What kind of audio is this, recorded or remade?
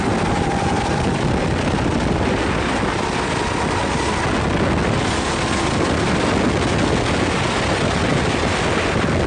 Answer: recorded